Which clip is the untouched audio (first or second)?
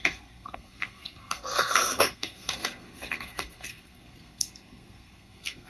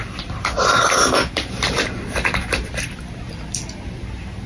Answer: second